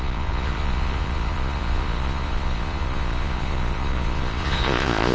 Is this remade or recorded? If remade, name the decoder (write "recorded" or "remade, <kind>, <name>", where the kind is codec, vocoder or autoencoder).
remade, vocoder, Vocos